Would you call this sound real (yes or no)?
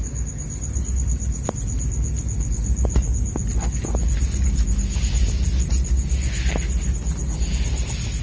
yes